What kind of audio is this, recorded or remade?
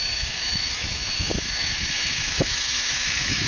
remade